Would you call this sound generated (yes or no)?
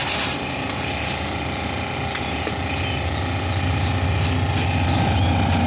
no